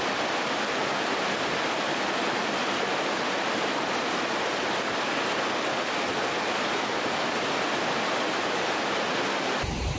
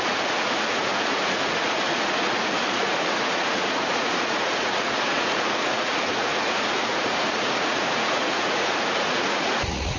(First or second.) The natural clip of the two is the first